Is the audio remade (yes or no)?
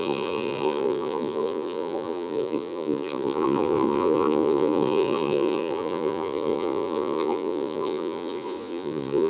yes